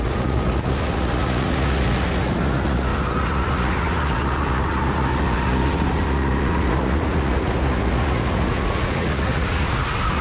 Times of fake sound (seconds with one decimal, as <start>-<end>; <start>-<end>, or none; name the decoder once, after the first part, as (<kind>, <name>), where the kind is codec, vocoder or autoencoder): 0.0-10.2 (vocoder, Vocos)

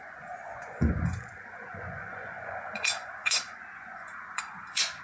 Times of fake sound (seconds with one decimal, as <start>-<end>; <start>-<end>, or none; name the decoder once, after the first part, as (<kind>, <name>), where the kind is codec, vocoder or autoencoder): 0.0-5.0 (vocoder, Vocos)

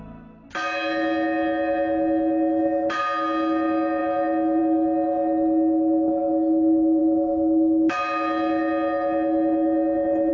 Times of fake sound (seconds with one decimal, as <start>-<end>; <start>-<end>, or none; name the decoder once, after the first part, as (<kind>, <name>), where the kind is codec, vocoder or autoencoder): none

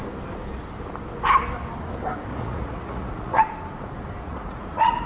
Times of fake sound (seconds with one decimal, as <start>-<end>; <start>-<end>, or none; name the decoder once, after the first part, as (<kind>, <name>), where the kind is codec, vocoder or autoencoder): 2.3-3.4 (vocoder, Vocos); 4.2-5.1

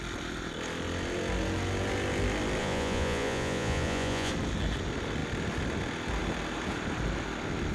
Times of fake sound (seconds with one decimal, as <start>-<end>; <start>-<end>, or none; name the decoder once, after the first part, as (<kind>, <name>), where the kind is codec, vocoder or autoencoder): 2.6-4.3 (vocoder, Vocos)

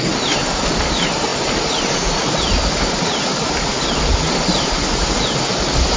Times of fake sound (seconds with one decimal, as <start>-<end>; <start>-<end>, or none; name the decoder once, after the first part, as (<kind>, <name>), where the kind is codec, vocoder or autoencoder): none

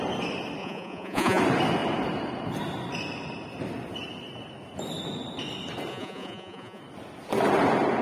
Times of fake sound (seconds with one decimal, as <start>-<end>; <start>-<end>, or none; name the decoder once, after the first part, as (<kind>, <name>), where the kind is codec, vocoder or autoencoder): 0.6-1.4 (vocoder, Vocos); 5.9-6.8